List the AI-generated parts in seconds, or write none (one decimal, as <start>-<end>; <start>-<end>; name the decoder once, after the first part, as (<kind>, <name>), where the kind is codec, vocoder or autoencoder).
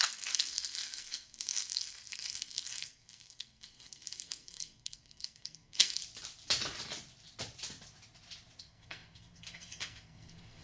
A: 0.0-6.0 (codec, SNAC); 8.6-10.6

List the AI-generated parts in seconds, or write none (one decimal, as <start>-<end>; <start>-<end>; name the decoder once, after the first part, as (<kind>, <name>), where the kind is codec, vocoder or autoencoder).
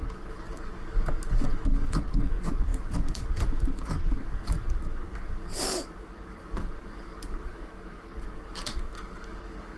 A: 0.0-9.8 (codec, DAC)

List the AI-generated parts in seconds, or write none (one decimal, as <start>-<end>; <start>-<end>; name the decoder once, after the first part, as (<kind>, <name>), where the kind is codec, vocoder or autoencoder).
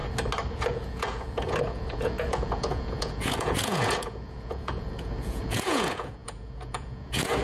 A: 0.5-7.4 (vocoder, Vocos)